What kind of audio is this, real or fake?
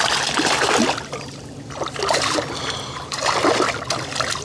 real